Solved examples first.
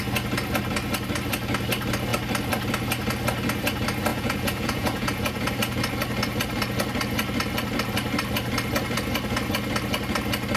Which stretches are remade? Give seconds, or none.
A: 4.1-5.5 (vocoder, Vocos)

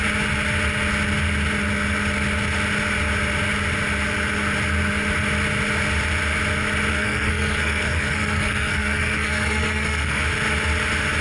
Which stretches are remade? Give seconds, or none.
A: 6.9-10.2 (codec, SNAC)